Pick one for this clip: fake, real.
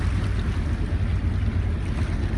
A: real